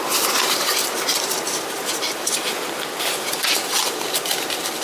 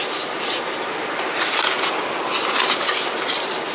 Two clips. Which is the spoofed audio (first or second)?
first